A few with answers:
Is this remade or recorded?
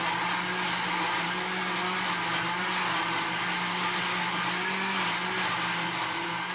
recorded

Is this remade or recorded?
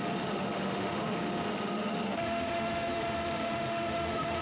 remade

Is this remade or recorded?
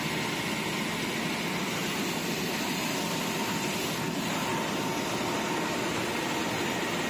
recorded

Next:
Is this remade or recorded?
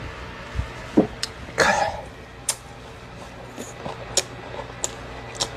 recorded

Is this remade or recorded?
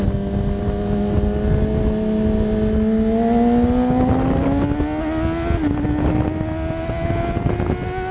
recorded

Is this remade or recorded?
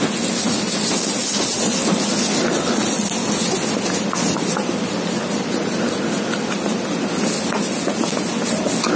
recorded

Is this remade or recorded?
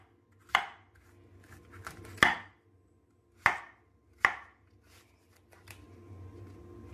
recorded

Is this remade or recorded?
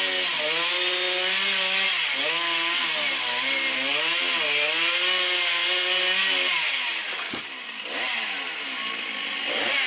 recorded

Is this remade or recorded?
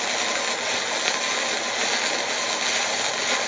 recorded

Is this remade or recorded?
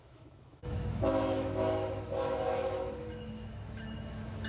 remade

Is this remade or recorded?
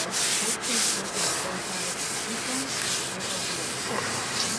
recorded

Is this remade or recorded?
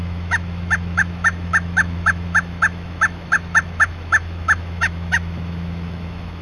remade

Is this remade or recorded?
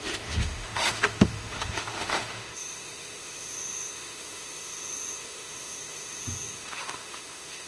remade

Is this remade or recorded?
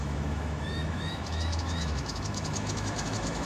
remade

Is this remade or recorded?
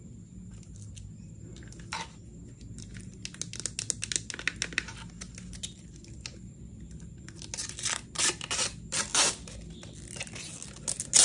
recorded